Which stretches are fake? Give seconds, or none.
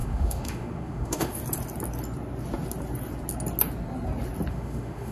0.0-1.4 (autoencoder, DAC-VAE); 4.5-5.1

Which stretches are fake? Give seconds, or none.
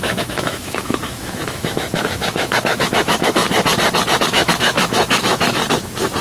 0.0-3.4 (autoencoder, DAC-VAE); 4.2-5.6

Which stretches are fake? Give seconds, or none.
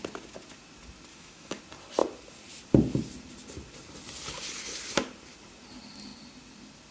1.1-1.6 (autoencoder, DAC-VAE)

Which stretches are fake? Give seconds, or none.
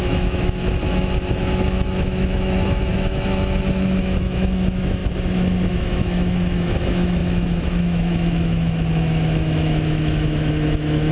0.0-5.0 (autoencoder, DAC-VAE); 5.7-11.1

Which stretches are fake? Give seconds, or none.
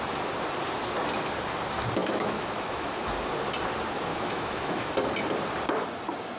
2.0-3.1 (autoencoder, DAC-VAE); 4.1-4.9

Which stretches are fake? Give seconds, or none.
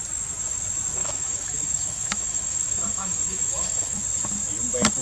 1.0-4.0 (autoencoder, DAC-VAE)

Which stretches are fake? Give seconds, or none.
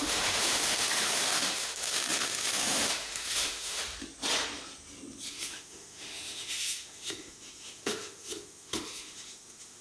0.0-3.8 (autoencoder, DAC-VAE); 5.3-9.8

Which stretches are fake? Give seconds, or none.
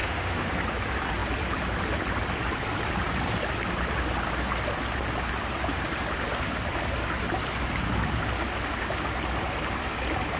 0.0-0.5 (autoencoder, DAC-VAE)